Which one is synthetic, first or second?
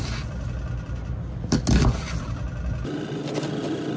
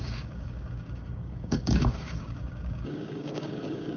second